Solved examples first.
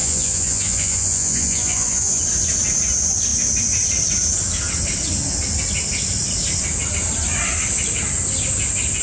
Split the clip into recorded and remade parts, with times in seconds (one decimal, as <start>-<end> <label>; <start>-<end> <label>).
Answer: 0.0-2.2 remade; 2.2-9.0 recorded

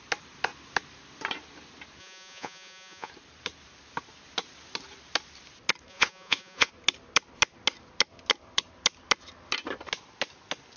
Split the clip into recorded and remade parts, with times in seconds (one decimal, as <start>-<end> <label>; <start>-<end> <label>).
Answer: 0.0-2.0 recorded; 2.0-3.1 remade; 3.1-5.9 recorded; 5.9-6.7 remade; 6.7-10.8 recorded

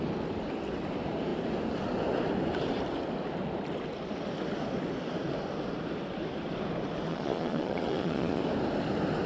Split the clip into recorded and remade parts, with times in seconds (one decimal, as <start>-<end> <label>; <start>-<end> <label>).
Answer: 0.0-7.1 recorded; 7.1-8.4 remade; 8.4-9.3 recorded